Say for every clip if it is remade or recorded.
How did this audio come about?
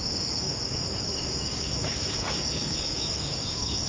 remade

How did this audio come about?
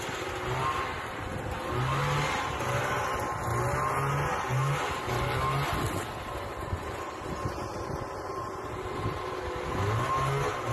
recorded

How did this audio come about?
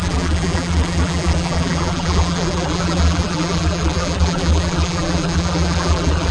remade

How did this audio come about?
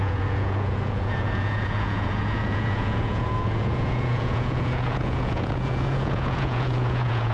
remade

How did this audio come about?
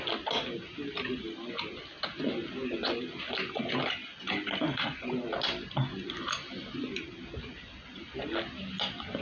recorded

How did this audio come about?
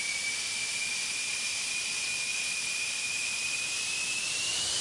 remade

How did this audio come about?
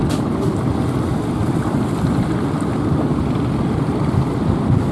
recorded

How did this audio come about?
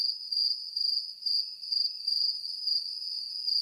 recorded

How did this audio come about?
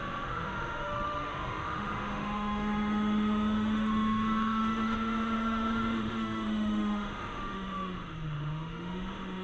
remade